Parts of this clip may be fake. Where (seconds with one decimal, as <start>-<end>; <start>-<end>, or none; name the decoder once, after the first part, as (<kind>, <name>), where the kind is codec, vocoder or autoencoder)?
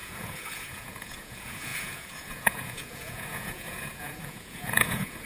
0.0-5.3 (vocoder, Vocos)